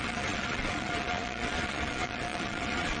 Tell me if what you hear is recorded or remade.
remade